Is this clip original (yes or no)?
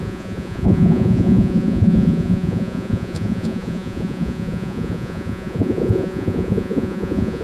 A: no